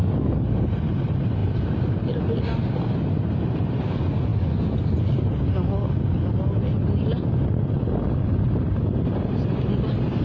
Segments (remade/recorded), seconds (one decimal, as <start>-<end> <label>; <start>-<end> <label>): 0.0-10.2 recorded